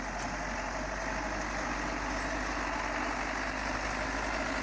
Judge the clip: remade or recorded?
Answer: recorded